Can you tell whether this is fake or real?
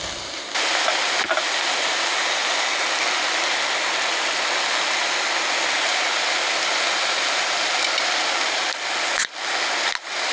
real